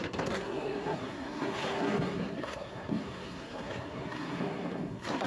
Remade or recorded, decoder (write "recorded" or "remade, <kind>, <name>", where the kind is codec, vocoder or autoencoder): remade, codec, SNAC